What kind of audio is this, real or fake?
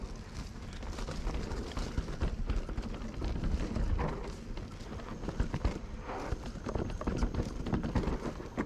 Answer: real